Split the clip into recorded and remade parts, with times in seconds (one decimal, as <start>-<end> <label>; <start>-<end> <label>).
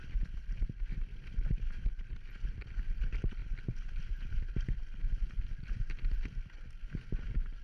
0.0-7.6 recorded